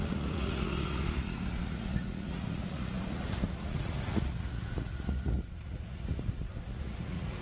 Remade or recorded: remade